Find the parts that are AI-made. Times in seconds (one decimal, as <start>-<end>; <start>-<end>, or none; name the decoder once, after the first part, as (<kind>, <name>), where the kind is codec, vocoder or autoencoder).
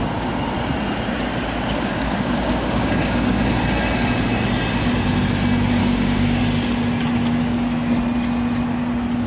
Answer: 1.9-3.4 (codec, DAC); 5.8-6.4; 7.4-7.9